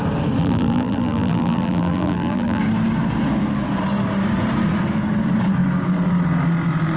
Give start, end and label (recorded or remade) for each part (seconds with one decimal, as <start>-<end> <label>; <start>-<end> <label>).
0.0-0.4 recorded; 0.4-2.6 remade; 2.6-7.0 recorded